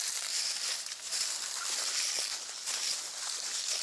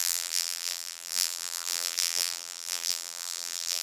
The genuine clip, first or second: first